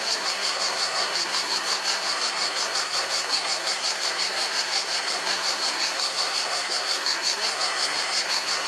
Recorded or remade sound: remade